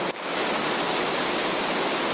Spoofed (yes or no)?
no